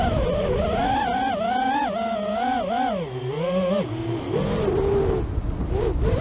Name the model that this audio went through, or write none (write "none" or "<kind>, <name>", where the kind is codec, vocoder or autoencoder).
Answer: none